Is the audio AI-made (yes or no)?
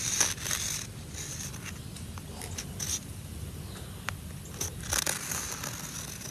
no